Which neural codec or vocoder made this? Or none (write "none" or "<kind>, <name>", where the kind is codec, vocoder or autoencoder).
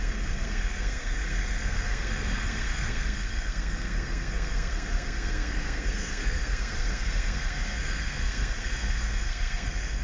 codec, SNAC